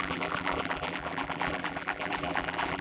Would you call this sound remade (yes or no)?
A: yes